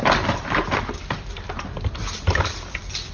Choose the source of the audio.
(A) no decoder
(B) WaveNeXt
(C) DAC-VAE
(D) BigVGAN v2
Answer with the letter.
A